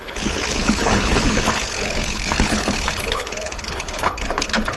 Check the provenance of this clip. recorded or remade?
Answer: remade